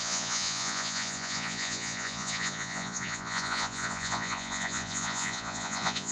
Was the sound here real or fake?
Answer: fake